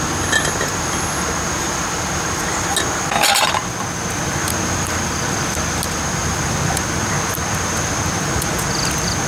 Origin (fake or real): real